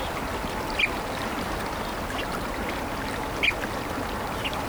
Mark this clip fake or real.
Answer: real